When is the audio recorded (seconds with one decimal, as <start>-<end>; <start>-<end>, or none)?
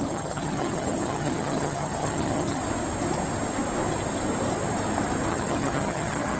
2.6-5.3